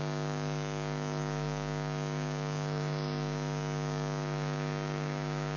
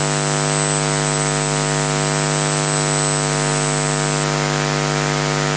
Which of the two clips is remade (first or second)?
first